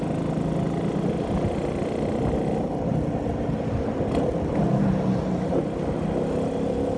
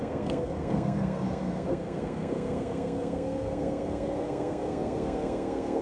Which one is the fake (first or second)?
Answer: second